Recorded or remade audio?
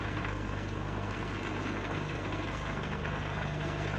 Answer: remade